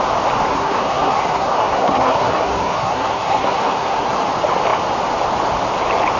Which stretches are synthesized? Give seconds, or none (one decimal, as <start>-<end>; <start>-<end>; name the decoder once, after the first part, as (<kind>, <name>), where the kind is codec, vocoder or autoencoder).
0.5-4.2 (codec, SNAC)

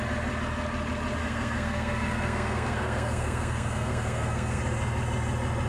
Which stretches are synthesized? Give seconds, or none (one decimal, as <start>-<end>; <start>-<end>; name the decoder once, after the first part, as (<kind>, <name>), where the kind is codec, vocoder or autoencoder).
1.2-4.6 (codec, SNAC)

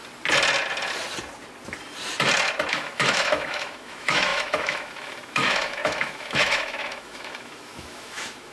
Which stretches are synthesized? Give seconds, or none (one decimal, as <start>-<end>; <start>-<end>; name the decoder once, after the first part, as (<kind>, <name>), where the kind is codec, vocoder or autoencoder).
2.7-8.5 (autoencoder, DAC-VAE)

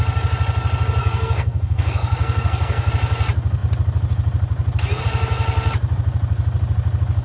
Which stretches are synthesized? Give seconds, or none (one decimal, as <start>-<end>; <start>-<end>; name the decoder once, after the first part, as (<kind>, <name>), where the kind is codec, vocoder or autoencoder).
1.0-2.9 (codec, SNAC)

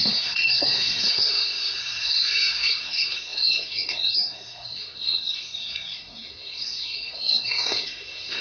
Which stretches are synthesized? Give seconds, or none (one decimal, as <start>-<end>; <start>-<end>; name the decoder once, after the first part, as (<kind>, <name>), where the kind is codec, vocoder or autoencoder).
0.0-8.4 (codec, SNAC)

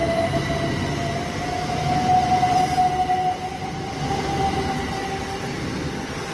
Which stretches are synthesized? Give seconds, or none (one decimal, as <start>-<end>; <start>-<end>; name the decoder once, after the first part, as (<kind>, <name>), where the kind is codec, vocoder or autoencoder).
none

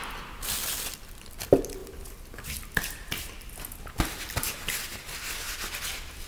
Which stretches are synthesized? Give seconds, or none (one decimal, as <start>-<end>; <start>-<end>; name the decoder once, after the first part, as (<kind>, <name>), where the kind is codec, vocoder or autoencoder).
none